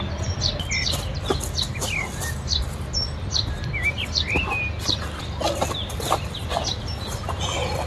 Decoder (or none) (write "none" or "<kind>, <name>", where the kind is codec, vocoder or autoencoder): none